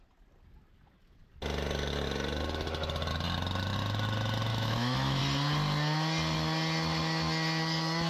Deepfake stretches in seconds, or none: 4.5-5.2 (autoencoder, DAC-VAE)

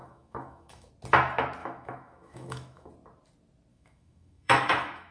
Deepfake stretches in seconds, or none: 0.0-0.9 (autoencoder, DAC-VAE); 1.6-2.9; 3.7-5.1

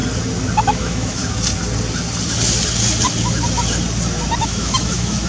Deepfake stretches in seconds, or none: 0.6-1.2 (autoencoder, DAC-VAE); 4.4-5.3

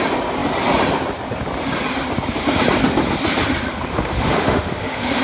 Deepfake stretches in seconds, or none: 3.9-5.2 (autoencoder, DAC-VAE)

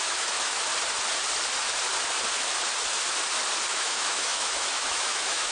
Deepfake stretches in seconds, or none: 0.0-0.7 (autoencoder, DAC-VAE); 3.7-5.5

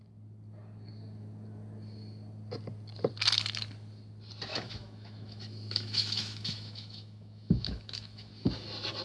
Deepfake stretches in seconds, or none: 4.5-8.3 (autoencoder, DAC-VAE)

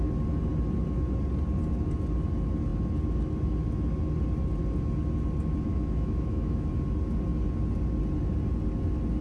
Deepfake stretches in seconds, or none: 5.7-6.7 (autoencoder, DAC-VAE)